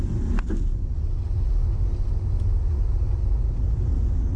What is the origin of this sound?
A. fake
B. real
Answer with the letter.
B